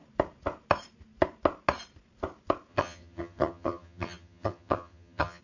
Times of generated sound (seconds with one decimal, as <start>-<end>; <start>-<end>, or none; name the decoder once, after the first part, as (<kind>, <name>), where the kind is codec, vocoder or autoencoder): 2.7-5.4 (vocoder, HiFi-GAN)